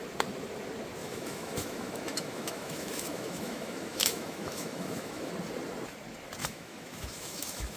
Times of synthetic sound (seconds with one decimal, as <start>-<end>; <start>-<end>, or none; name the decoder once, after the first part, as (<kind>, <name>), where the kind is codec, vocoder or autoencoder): 1.0-5.3 (autoencoder, DAC-VAE); 6.4-7.8